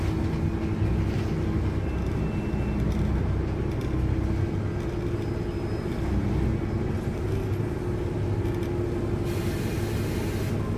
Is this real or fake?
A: real